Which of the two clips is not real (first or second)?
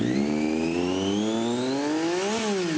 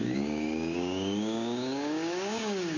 second